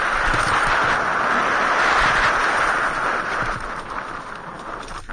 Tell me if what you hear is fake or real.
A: real